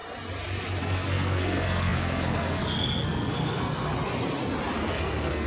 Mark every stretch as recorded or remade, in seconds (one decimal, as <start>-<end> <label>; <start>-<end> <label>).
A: 0.0-0.8 recorded; 0.8-3.9 remade; 3.9-4.9 recorded; 4.9-5.5 remade